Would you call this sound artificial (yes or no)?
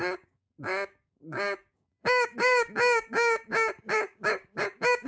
yes